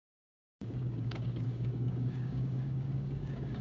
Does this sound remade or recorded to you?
remade